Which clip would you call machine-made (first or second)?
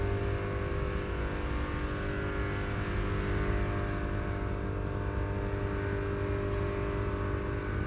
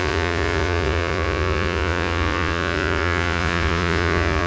second